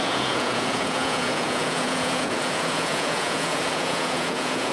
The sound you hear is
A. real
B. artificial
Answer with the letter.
B